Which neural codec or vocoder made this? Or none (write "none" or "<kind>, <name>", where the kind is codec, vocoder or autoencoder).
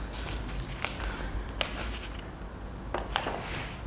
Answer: none